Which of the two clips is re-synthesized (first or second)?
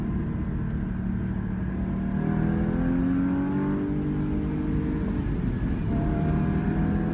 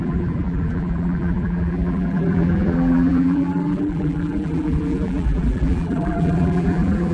second